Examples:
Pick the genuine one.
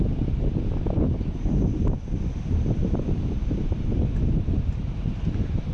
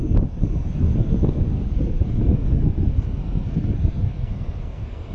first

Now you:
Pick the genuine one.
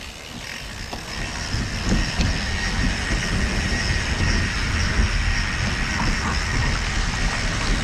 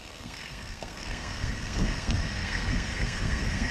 first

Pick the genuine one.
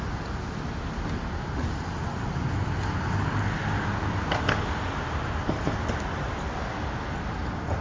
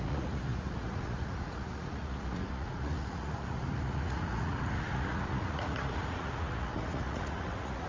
first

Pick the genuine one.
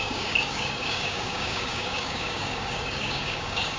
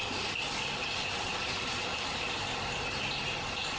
second